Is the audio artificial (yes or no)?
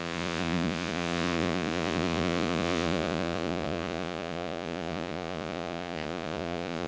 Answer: yes